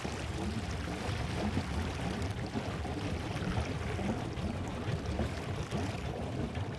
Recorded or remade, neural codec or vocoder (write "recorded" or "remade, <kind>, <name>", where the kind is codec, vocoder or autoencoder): recorded